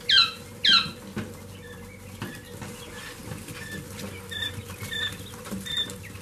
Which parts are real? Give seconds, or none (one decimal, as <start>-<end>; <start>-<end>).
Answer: 0.0-6.2